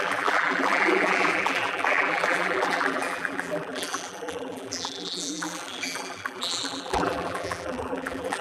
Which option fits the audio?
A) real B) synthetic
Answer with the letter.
B